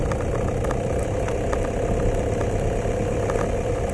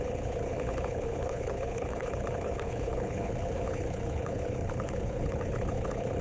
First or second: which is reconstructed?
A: second